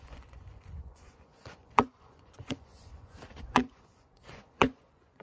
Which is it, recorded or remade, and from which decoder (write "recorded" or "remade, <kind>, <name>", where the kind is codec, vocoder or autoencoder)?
remade, vocoder, Vocos